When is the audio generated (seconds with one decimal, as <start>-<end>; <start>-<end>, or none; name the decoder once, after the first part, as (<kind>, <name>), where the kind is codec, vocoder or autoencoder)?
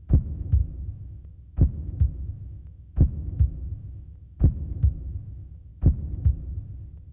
0.0-5.7 (autoencoder, DAC-VAE)